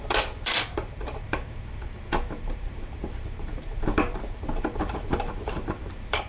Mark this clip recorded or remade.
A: remade